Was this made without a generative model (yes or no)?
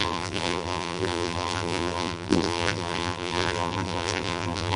no